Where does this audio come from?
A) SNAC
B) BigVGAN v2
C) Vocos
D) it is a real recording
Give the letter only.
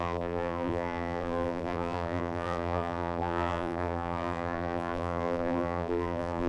B